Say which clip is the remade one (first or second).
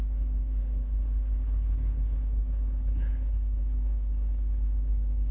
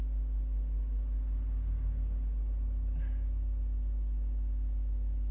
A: first